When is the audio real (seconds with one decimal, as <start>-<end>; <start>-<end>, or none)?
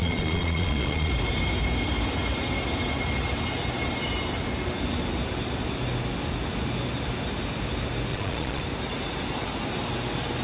1.1-8.1; 8.6-10.4